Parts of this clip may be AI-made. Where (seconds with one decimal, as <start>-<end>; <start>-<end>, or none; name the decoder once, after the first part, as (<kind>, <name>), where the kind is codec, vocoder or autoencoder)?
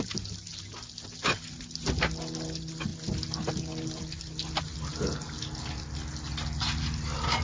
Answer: none